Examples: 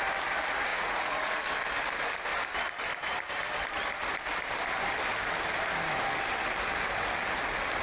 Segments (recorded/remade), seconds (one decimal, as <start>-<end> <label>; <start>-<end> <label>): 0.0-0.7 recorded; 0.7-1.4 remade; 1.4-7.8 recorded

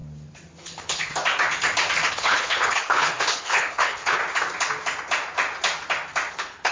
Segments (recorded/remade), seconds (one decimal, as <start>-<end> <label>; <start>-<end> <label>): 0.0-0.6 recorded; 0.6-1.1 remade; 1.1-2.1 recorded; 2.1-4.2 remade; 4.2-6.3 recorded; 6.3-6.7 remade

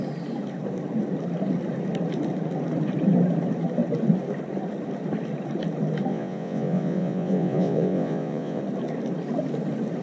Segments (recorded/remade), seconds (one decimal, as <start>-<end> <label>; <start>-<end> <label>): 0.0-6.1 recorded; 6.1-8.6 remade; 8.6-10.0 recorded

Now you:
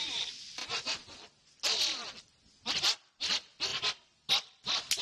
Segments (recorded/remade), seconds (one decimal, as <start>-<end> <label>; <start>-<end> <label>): 0.0-5.0 recorded